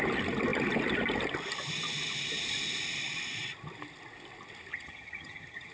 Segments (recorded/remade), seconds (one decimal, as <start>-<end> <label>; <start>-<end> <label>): 0.0-4.7 recorded; 4.7-5.7 remade